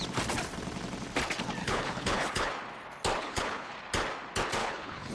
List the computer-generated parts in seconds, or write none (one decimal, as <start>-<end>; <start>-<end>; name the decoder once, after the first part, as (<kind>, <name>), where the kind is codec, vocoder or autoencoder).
1.6-2.5 (codec, HILCodec); 3.2-3.7; 4.6-5.1